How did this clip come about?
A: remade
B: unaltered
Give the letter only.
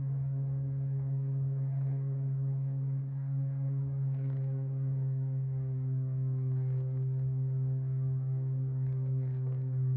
A